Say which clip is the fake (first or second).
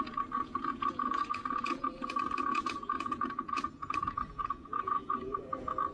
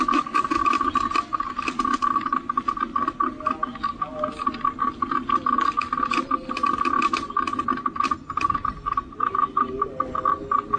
first